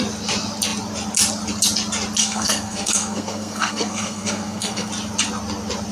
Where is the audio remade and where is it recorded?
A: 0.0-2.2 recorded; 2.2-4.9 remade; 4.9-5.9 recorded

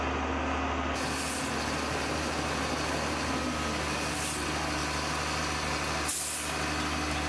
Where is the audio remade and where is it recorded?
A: 0.0-7.3 recorded

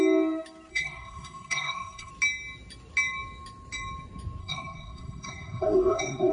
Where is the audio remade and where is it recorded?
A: 0.0-0.7 recorded; 0.7-2.1 remade; 2.1-4.4 recorded; 4.4-6.3 remade

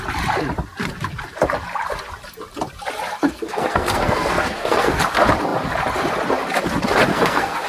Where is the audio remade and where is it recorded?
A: 0.0-3.2 recorded; 3.2-5.0 remade; 5.0-7.1 recorded; 7.1-7.7 remade

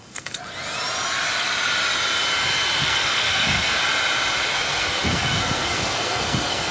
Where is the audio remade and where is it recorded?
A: 0.0-0.4 remade; 0.4-2.8 recorded; 2.8-3.8 remade; 3.8-4.5 recorded; 4.5-6.7 remade

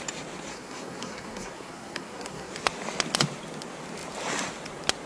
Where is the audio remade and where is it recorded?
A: 0.0-0.5 recorded; 0.5-2.5 remade; 2.5-5.1 recorded